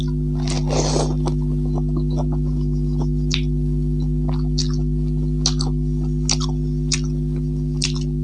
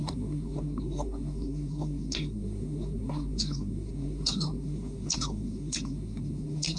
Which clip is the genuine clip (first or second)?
first